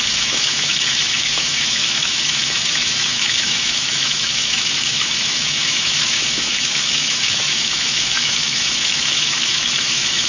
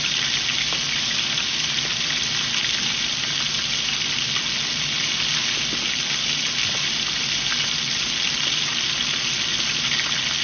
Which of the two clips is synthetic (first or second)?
first